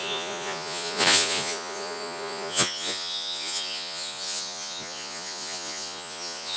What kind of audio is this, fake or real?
fake